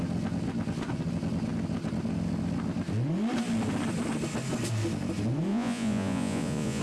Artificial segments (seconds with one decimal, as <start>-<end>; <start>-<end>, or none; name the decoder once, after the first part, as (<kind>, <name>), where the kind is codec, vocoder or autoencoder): 5.5-6.8 (vocoder, Vocos)